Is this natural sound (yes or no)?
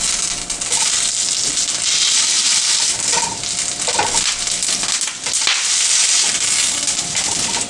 yes